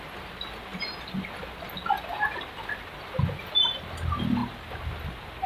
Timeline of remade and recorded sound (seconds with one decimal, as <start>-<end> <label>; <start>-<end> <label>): 0.0-5.5 recorded